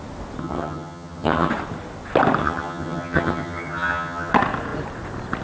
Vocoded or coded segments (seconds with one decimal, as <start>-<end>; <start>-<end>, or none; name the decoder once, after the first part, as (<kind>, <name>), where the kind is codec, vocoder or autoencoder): 0.4-1.5 (vocoder, HiFi-GAN); 2.4-4.3